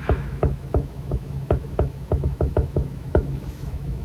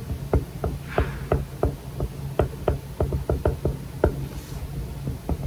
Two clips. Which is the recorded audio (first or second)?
second